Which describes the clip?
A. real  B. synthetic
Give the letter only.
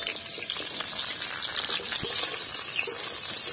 A